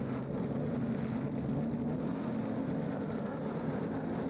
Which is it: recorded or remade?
recorded